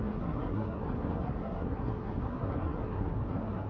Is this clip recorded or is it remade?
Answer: remade